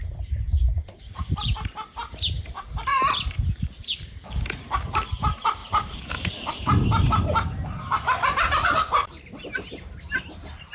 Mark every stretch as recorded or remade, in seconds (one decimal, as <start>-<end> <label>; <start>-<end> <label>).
0.0-2.9 remade; 2.9-3.5 recorded; 3.5-10.7 remade